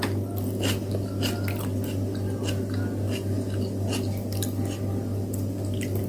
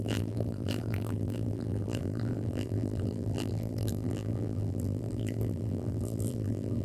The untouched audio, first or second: first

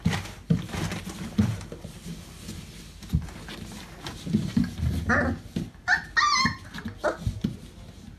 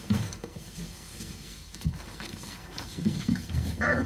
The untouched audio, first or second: first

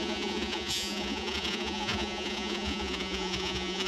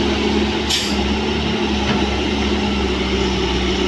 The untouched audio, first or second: second